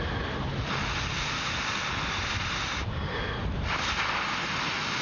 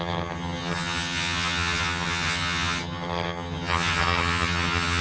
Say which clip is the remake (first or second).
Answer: second